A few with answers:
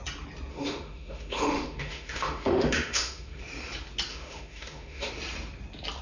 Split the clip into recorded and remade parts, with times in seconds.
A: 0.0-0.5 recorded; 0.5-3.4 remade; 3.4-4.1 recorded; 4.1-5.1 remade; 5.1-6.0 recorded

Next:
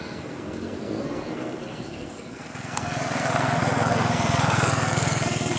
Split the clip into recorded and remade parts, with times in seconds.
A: 0.0-5.6 remade

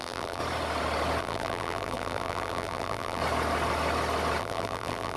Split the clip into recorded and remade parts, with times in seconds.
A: 0.0-0.4 remade; 0.4-1.2 recorded; 1.2-3.2 remade; 3.2-4.4 recorded; 4.4-5.2 remade